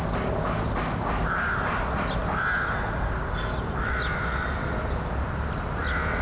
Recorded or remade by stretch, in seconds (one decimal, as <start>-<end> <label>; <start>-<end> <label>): 0.0-6.2 recorded